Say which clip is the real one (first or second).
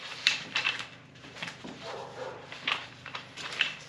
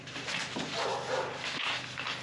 second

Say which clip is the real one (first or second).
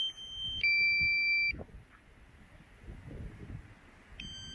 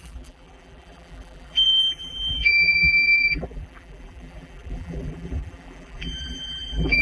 first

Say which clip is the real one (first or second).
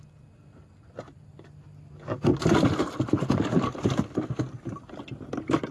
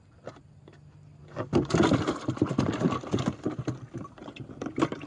first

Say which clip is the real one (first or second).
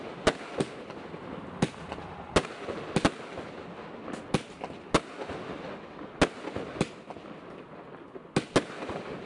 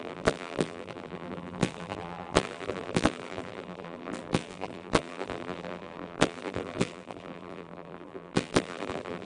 first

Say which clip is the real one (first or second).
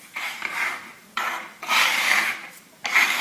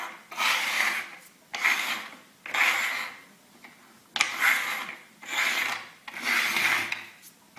second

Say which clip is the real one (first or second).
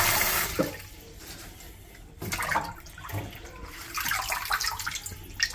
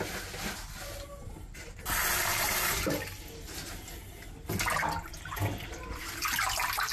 second